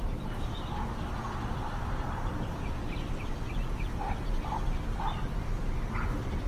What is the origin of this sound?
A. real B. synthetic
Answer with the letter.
A